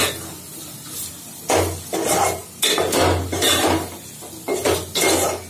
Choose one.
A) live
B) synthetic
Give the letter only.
A